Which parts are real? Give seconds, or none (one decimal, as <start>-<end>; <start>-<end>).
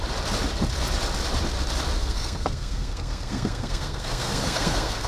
0.0-2.0